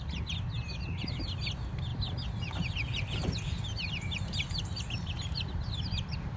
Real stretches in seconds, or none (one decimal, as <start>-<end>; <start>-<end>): 0.0-6.4